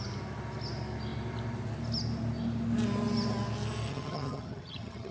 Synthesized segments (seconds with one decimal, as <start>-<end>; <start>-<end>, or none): 3.9-5.1